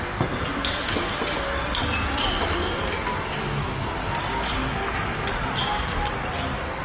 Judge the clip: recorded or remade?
recorded